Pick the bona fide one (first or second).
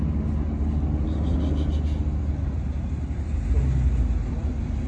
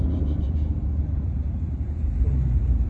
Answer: first